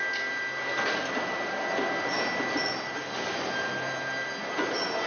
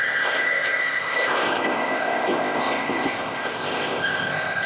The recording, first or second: first